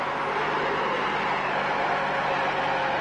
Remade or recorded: recorded